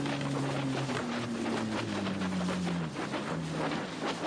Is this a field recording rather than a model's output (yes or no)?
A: yes